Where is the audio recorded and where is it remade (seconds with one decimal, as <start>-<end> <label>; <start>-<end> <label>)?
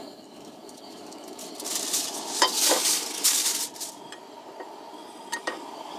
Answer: 0.0-1.4 remade; 1.4-2.4 recorded; 2.4-3.4 remade; 3.4-5.4 recorded; 5.4-6.0 remade